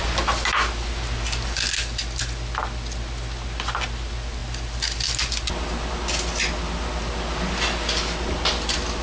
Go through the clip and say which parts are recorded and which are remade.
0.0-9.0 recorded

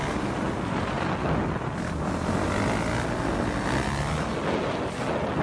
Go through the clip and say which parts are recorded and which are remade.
0.0-5.4 recorded

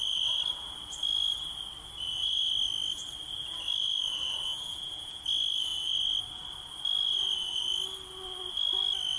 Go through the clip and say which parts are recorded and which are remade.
0.0-4.5 recorded; 4.5-5.2 remade; 5.2-9.2 recorded

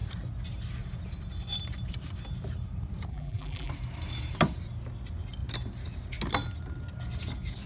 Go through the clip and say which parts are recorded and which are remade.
0.0-3.1 recorded; 3.1-3.7 remade; 3.7-7.7 recorded

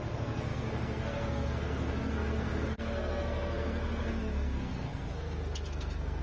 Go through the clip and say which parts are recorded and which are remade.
0.0-6.2 remade